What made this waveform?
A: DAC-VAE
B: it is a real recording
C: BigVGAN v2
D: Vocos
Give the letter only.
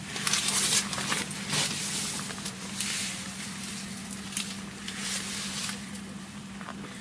B